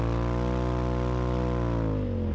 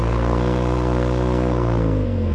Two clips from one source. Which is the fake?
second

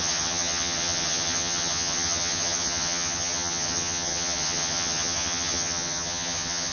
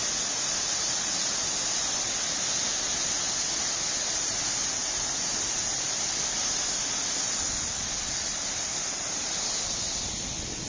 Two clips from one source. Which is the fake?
first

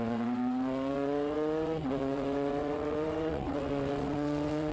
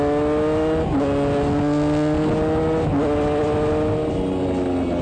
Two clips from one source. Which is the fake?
first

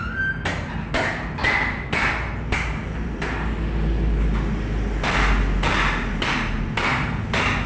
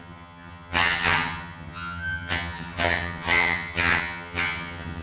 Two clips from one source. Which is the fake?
second